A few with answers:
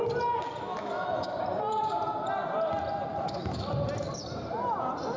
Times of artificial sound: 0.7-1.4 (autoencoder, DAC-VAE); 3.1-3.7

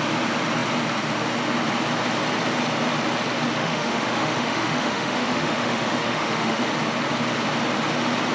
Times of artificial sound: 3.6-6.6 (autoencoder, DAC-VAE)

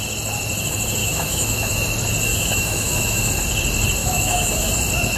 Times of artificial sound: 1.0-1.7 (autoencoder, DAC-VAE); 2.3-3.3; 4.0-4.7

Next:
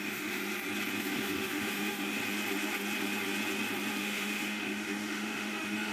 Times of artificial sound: 0.0-0.4 (autoencoder, DAC-VAE); 1.0-2.2; 3.9-5.9